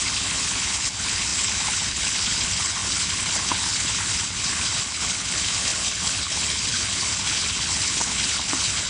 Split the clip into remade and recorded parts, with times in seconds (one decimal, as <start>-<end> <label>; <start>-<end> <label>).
0.0-8.9 remade